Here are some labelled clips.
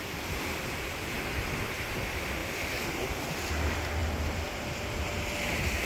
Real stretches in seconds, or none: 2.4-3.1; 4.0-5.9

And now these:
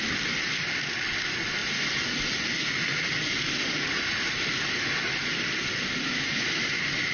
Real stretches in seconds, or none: 0.0-7.1

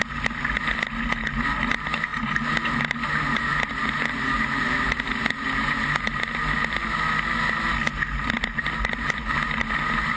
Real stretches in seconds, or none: 0.0-2.1; 6.2-10.2

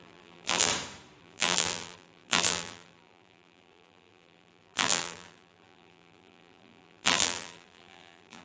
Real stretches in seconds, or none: 0.7-1.2

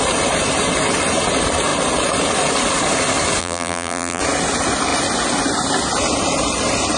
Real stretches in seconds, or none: 0.0-3.4; 4.2-7.0